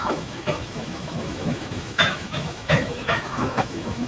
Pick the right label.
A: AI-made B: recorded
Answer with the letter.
A